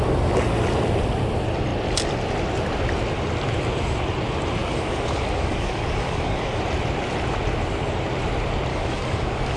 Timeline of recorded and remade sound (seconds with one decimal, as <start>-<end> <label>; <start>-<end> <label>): 0.0-4.6 recorded; 4.6-6.6 remade; 6.6-8.7 recorded; 8.7-9.6 remade